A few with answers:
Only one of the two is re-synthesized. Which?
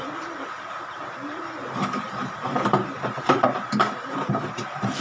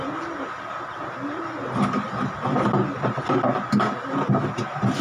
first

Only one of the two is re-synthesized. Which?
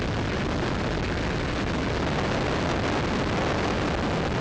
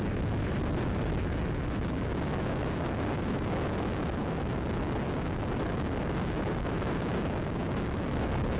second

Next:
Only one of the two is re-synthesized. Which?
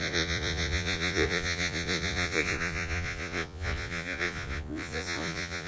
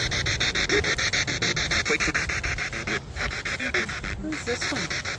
first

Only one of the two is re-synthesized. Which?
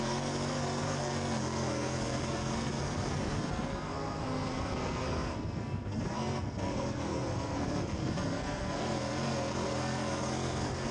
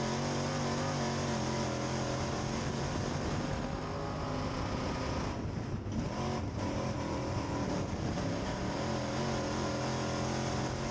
first